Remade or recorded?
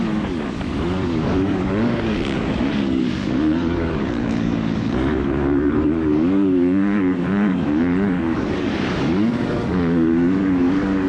remade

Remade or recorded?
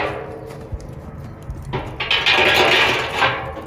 recorded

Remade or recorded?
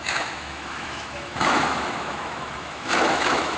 remade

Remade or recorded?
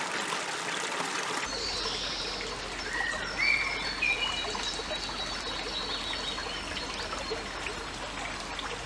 recorded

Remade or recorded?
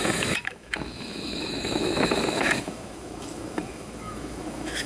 remade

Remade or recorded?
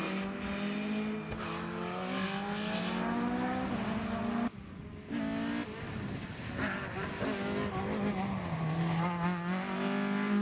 recorded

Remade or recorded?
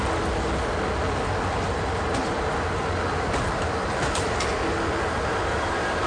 recorded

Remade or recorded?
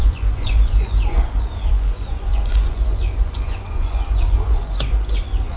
remade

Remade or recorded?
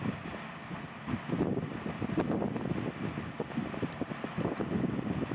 recorded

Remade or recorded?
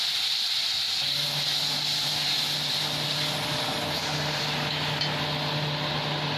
recorded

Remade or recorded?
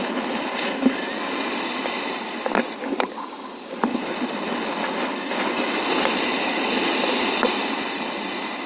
recorded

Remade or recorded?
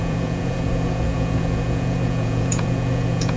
remade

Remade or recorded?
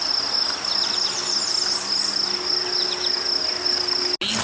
recorded